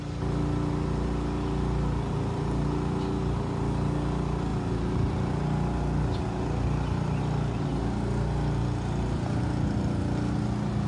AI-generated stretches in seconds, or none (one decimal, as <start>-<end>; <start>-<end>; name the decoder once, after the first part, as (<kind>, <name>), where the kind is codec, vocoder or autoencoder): none